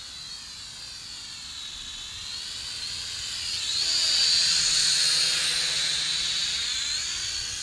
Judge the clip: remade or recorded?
recorded